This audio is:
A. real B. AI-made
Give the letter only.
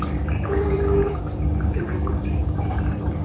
B